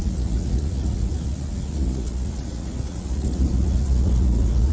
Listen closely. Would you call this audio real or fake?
fake